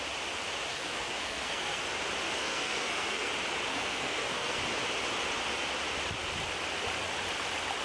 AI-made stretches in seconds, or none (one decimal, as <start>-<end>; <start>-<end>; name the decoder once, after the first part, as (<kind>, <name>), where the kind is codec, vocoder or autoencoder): 0.7-1.8 (codec, SNAC); 2.4-3.3; 3.7-4.6